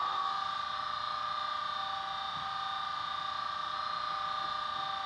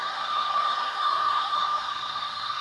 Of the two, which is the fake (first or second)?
second